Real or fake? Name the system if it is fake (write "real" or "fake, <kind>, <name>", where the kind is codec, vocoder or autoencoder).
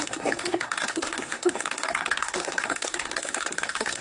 fake, codec, SNAC